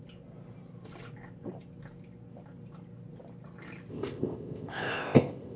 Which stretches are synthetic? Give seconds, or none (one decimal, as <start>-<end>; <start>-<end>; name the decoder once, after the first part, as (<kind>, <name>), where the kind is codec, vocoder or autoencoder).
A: 3.9-5.6 (codec, ZipCodec)